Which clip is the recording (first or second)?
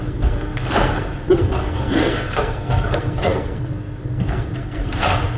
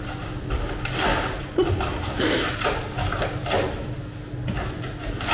second